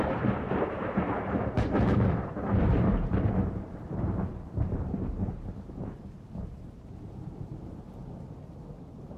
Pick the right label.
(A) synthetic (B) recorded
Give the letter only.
A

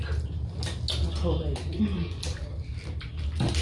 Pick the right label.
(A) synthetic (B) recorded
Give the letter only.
B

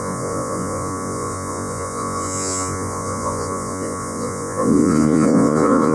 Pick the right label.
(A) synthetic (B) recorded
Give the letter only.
A